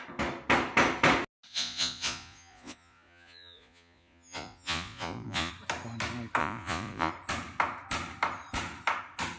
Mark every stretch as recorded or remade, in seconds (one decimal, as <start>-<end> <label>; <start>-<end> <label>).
0.0-1.5 recorded; 1.5-5.5 remade; 5.5-6.4 recorded; 6.4-7.1 remade; 7.1-9.4 recorded